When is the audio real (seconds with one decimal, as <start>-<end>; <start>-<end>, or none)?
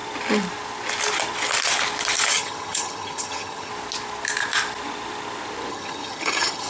0.0-2.3; 3.7-5.7